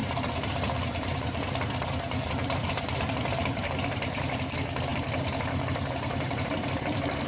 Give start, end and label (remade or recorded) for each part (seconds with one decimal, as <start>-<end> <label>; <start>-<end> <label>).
0.0-4.4 remade; 4.4-4.9 recorded; 4.9-7.3 remade

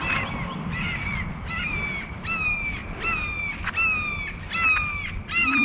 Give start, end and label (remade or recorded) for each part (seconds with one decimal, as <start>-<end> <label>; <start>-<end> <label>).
0.0-5.6 recorded